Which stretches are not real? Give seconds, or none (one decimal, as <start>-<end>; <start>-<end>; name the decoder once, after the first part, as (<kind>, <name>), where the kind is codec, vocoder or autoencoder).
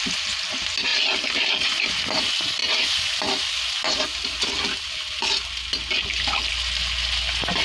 none